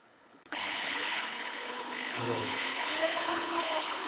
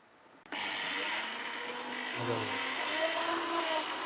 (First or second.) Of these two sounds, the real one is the second